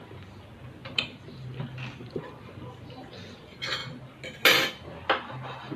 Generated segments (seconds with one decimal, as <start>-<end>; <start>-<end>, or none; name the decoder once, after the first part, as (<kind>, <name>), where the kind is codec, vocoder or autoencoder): 0.8-3.4 (vocoder, BigVGAN v2)